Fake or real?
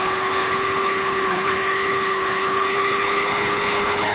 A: fake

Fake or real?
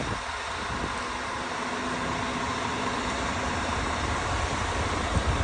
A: real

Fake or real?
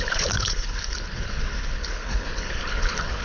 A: fake